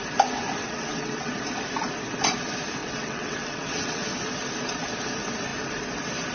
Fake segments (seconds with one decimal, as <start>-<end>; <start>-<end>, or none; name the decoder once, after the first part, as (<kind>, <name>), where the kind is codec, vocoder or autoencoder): 0.6-1.3 (vocoder, WaveNeXt); 2.8-4.0

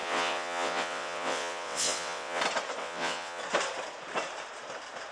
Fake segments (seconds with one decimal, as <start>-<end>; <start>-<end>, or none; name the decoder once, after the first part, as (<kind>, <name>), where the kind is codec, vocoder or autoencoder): 0.0-2.4 (vocoder, WaveNeXt); 2.8-3.4

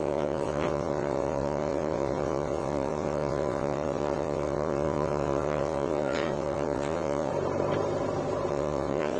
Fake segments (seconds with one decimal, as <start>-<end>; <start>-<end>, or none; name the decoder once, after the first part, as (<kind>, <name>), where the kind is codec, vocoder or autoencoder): 0.0-7.3 (vocoder, WaveNeXt); 8.5-9.2

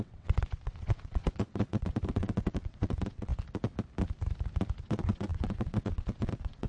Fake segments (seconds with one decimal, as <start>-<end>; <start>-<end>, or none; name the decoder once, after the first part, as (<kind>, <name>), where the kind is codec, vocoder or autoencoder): 0.0-3.3 (vocoder, WaveNeXt); 4.8-6.7

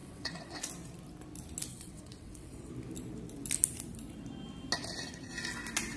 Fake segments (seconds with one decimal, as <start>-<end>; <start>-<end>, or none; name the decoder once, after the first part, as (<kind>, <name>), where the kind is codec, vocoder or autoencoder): 0.0-0.6 (vocoder, WaveNeXt); 1.7-2.7

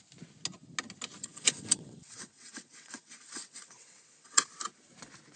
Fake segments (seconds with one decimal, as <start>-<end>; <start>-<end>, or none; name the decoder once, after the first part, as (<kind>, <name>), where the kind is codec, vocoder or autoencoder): 1.2-4.4 (vocoder, WaveNeXt)

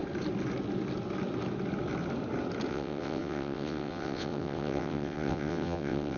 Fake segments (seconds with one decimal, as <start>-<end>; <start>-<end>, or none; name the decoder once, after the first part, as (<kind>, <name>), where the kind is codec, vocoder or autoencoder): 2.7-6.2 (vocoder, WaveNeXt)